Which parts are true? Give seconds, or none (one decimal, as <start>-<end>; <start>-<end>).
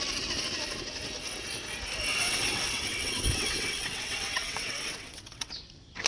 0.0-2.1; 5.5-6.1